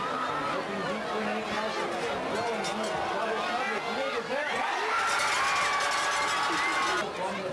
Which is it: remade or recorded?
recorded